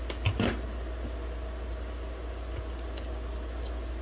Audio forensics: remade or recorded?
recorded